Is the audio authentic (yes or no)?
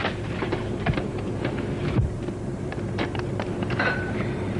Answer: no